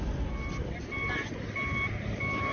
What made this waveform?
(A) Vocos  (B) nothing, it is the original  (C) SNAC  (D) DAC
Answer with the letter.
B